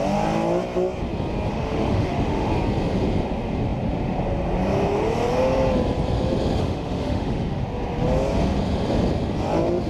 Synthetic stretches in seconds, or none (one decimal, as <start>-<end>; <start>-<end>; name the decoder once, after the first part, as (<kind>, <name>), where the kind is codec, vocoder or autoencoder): 1.5-2.5 (autoencoder, DAC-VAE); 6.6-7.6